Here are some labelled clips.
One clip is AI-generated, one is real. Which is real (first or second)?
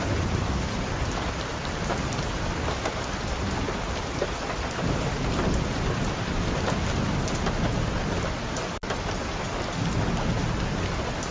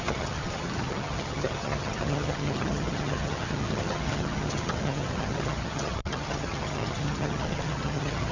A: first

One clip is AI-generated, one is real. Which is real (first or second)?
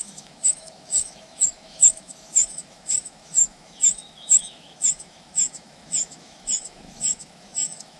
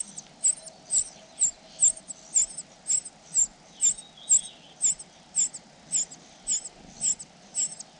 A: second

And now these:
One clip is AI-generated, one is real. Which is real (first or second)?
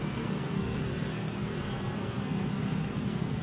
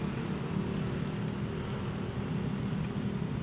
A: second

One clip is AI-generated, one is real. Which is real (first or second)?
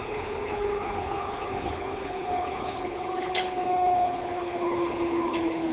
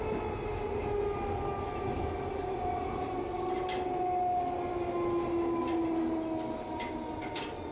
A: second